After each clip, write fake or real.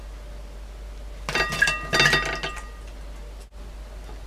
real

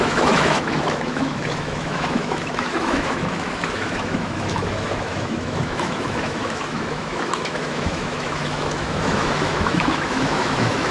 fake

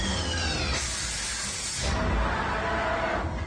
real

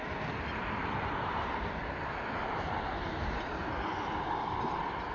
real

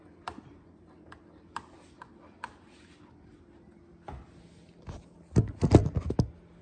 real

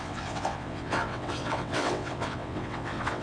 fake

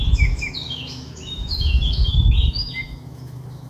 fake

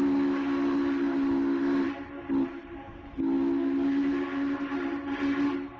real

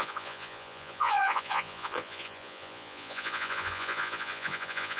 fake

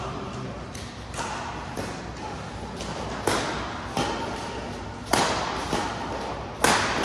real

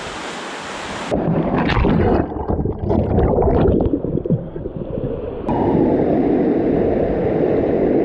real